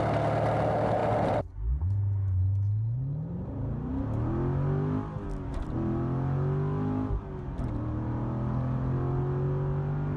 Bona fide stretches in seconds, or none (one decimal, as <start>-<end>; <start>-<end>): 0.0-10.2